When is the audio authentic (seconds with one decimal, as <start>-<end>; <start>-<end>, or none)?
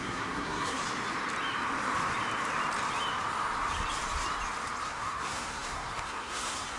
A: 0.8-4.8